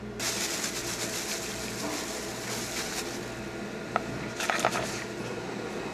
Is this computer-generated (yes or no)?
no